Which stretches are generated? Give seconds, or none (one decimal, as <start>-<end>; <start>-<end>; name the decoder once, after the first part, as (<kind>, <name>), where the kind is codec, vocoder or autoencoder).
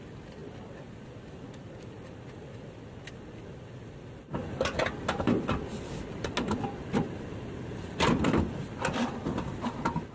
none